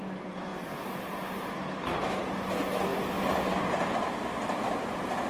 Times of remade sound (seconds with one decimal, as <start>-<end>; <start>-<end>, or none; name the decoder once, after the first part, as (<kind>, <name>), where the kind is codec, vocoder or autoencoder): none